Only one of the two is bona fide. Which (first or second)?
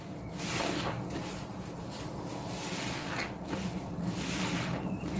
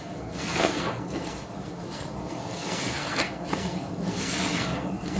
first